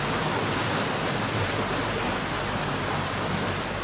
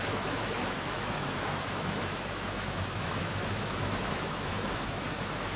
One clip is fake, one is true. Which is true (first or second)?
first